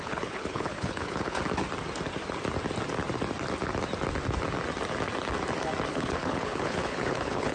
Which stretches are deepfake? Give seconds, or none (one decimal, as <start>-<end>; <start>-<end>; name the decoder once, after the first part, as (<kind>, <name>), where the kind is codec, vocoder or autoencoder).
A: 0.0-1.4 (codec, HILCodec); 5.9-7.5